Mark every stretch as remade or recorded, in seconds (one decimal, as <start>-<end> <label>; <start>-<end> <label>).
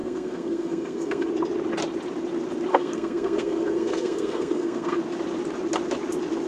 0.0-1.3 remade; 1.3-2.7 recorded; 2.7-5.0 remade; 5.0-6.5 recorded